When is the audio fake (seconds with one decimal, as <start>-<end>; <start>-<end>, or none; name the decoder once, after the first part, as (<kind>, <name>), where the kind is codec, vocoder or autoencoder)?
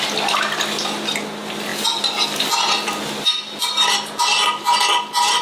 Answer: none